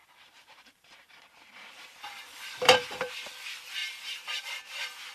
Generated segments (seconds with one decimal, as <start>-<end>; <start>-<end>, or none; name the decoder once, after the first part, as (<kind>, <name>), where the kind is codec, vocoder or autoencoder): 0.0-3.1 (vocoder, BigVGAN v2); 3.8-4.4